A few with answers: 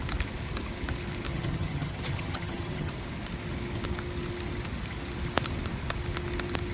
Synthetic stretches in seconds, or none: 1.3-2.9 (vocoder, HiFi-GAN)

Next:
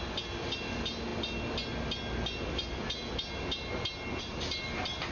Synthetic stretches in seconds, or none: none

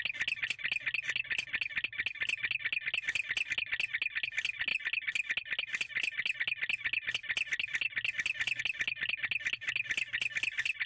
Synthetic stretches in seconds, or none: none

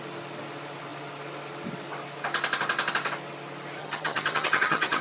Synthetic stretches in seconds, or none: 3.8-5.0 (vocoder, HiFi-GAN)

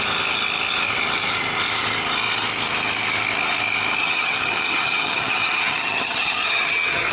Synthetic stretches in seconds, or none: 4.0-7.1 (vocoder, HiFi-GAN)

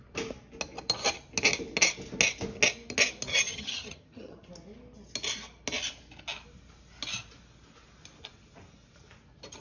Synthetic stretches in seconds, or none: 3.3-4.5 (vocoder, HiFi-GAN)